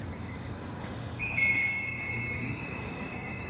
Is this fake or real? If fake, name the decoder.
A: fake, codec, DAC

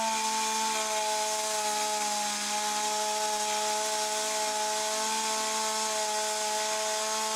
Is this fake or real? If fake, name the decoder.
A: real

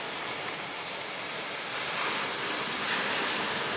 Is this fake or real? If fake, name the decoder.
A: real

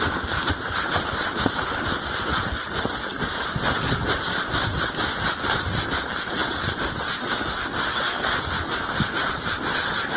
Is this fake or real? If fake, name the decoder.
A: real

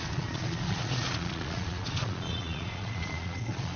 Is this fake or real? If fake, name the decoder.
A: fake, vocoder, Vocos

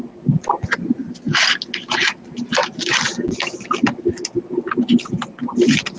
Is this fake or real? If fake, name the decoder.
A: real